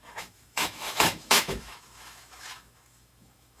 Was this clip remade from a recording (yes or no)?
yes